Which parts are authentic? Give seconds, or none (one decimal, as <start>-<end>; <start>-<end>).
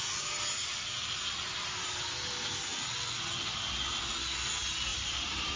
0.0-4.9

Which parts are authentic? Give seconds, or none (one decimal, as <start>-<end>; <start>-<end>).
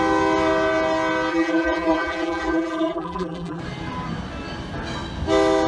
0.0-1.3; 3.6-5.7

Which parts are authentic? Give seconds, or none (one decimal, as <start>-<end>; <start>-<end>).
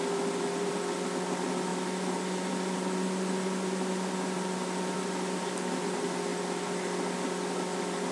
6.3-6.8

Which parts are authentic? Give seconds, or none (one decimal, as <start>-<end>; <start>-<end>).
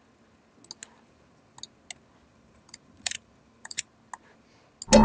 0.0-2.3; 3.9-5.0